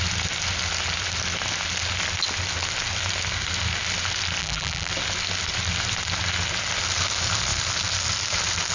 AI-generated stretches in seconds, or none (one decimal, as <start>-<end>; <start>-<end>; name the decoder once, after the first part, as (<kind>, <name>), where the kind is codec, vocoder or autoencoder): 4.4-4.9 (vocoder, BigVGAN v2)

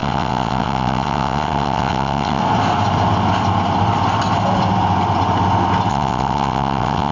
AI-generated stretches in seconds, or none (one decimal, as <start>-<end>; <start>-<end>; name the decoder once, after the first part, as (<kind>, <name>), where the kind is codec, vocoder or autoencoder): 0.0-2.4 (vocoder, WaveNeXt); 5.9-7.1

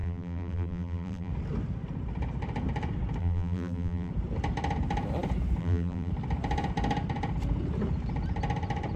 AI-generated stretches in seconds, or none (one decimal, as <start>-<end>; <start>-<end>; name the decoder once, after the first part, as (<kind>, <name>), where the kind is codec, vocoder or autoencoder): 0.0-1.3 (vocoder, BigVGAN v2); 3.2-4.1; 5.6-6.1